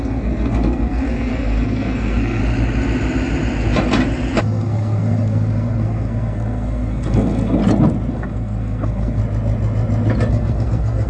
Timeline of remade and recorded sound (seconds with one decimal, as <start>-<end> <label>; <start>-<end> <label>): 0.0-2.4 remade; 2.4-4.4 recorded; 4.4-7.6 remade; 7.6-8.1 recorded; 8.1-9.2 remade; 9.2-10.3 recorded; 10.3-11.1 remade